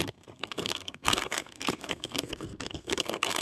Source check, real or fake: fake